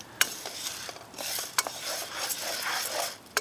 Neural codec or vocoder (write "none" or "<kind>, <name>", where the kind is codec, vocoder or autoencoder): vocoder, BigVGAN v2